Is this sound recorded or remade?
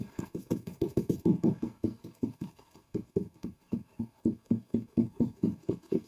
remade